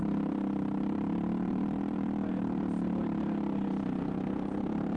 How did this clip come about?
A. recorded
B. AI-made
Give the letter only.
B